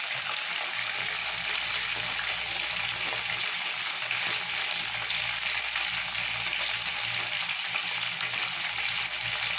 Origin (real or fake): real